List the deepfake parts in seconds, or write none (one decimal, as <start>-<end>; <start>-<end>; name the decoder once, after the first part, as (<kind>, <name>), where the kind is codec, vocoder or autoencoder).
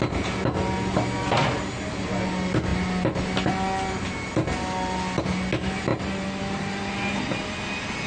5.9-6.4 (vocoder, BigVGAN v2)